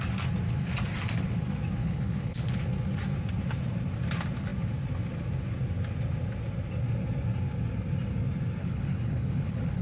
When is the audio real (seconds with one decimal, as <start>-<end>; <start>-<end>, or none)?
0.0-1.8; 2.6-8.6